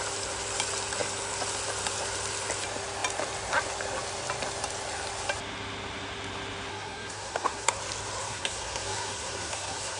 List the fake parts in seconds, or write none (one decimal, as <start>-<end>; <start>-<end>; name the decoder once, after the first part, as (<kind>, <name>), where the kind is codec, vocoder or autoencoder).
6.7-7.8 (codec, SNAC); 8.2-10.0